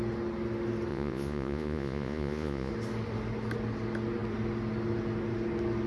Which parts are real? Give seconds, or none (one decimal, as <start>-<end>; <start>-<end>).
0.0-0.9; 2.7-5.9

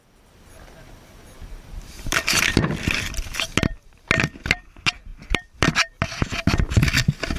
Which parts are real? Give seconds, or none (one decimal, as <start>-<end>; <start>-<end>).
0.0-7.4

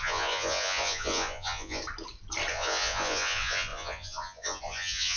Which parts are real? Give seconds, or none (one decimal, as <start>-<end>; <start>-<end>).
1.8-2.5

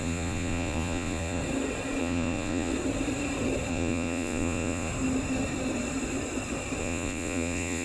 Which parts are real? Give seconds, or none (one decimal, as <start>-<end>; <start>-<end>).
1.4-2.0; 2.7-3.7; 4.9-6.8

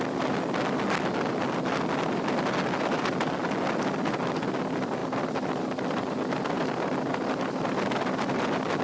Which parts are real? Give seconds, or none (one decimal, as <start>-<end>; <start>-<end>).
0.0-8.8

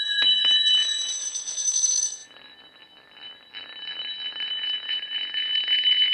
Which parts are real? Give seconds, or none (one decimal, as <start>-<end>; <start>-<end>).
2.2-4.5

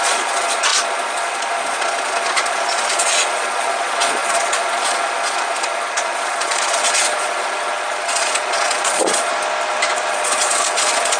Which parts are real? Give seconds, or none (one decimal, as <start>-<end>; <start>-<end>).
9.3-10.1